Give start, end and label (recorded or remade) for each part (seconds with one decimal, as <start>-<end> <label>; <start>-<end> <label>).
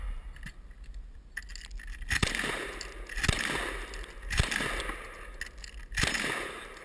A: 0.0-6.8 recorded